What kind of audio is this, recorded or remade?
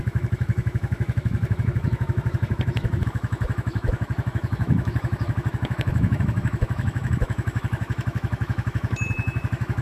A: remade